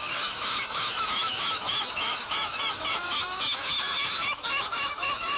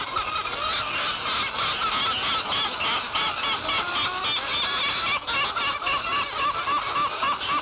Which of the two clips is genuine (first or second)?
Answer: second